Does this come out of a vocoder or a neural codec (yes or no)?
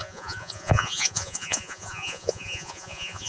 yes